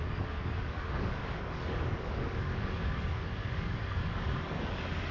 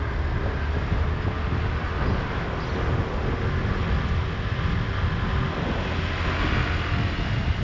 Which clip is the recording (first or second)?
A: second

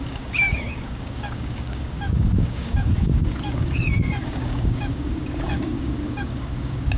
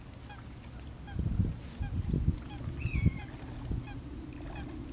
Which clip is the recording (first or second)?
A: second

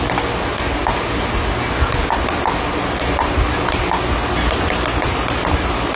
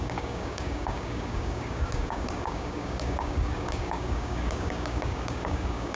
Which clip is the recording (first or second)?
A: first